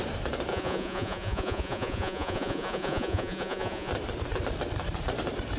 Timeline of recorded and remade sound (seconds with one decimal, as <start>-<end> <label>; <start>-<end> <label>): 0.0-0.5 recorded; 0.5-3.9 remade; 3.9-5.6 recorded

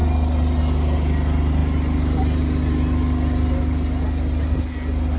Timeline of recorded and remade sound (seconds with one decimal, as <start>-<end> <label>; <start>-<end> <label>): 0.0-5.2 recorded

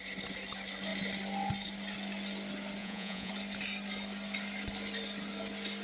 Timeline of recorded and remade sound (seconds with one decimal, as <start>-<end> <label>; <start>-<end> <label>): 0.0-2.8 recorded; 2.8-3.3 remade; 3.3-5.8 recorded

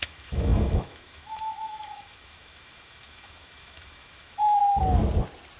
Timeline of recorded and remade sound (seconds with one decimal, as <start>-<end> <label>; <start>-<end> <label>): 0.0-4.6 remade; 4.6-5.6 recorded

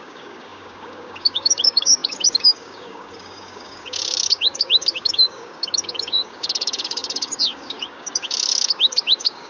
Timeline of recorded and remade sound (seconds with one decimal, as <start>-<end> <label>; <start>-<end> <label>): 0.0-9.5 remade

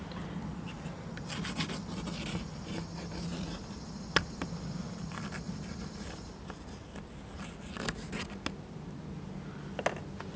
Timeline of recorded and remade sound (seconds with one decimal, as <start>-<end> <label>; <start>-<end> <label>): 0.0-10.4 recorded

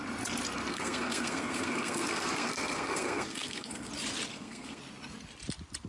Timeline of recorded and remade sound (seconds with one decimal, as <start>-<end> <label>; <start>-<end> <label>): 0.0-0.7 recorded; 0.7-3.9 remade; 3.9-4.3 recorded; 4.3-4.8 remade; 4.8-5.9 recorded